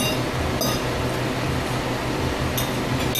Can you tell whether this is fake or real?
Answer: real